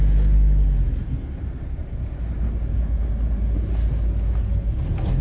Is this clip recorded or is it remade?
recorded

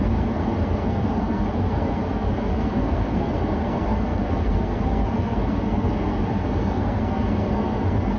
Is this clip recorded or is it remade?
remade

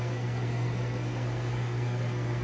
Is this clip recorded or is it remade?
remade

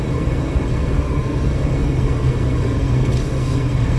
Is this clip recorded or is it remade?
remade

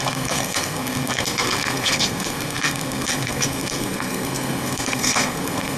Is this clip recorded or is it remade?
remade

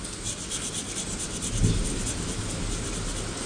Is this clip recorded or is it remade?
recorded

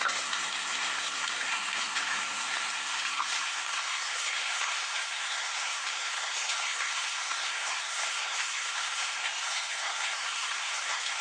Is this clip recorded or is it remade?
remade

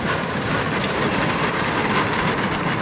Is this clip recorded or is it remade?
recorded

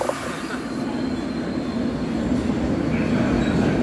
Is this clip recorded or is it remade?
recorded